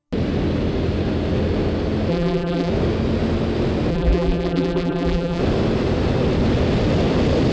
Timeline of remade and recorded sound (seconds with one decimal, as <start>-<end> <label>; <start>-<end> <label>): 0.0-2.1 recorded; 2.1-2.7 remade; 2.7-3.9 recorded; 3.9-5.4 remade; 5.4-7.5 recorded